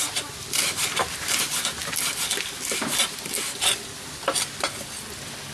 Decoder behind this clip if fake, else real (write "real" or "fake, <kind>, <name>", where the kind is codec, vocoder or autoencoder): real